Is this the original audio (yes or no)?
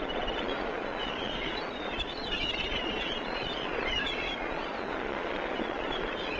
no